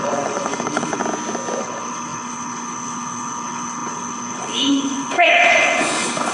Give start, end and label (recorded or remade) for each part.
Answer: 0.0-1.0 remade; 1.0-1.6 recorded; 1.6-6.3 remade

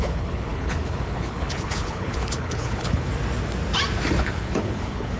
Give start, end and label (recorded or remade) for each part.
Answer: 0.0-3.1 remade; 3.1-4.2 recorded; 4.2-5.2 remade